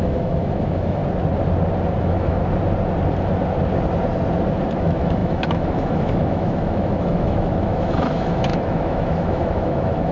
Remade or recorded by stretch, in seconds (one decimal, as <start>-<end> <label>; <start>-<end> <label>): 0.0-1.0 remade; 1.0-2.0 recorded; 2.0-2.4 remade; 2.4-4.8 recorded; 4.8-10.1 remade